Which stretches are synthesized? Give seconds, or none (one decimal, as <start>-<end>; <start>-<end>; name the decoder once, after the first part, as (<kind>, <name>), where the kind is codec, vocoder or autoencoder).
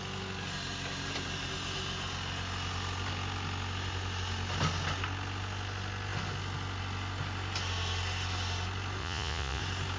9.0-9.6 (vocoder, Vocos)